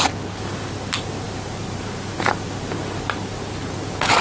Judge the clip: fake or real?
real